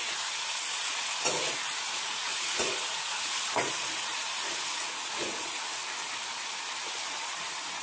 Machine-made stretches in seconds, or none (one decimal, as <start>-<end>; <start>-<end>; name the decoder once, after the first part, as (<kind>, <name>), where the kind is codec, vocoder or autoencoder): 0.0-5.8 (vocoder, Vocos); 7.1-7.8